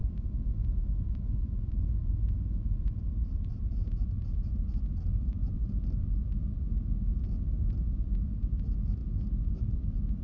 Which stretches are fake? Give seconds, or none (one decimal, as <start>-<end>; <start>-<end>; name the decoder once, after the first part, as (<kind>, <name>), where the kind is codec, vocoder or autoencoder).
none